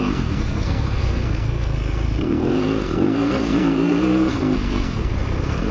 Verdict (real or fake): fake